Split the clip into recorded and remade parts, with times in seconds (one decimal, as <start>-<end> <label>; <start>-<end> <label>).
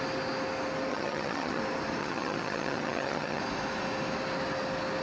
0.0-0.9 recorded; 0.9-1.6 remade; 1.6-2.0 recorded; 2.0-3.4 remade; 3.4-5.0 recorded